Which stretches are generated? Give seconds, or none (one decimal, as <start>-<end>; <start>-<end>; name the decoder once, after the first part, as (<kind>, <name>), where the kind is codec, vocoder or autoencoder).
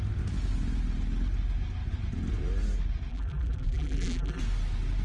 3.1-4.4 (vocoder, BigVGAN v2)